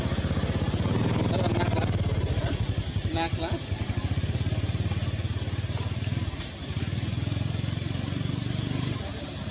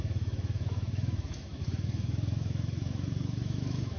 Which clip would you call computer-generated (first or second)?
second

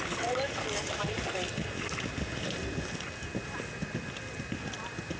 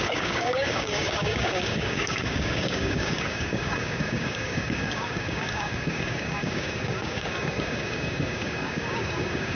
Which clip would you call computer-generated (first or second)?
second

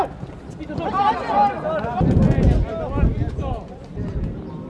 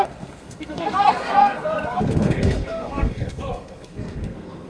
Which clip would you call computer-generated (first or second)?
second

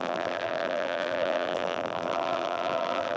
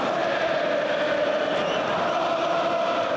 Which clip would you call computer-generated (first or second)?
first